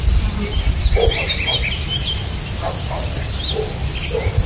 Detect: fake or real real